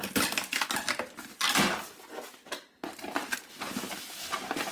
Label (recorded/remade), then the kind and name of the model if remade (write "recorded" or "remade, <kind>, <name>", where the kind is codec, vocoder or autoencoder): recorded